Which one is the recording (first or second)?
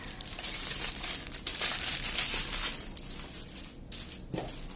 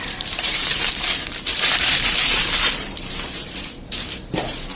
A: first